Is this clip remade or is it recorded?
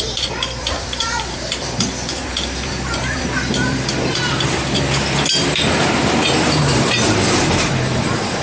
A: remade